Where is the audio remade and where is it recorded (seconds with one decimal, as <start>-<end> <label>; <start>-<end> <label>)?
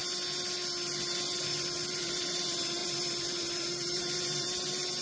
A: 0.0-1.4 recorded; 1.4-5.0 remade